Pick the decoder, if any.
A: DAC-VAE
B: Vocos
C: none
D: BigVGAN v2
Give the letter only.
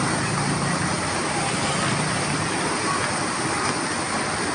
C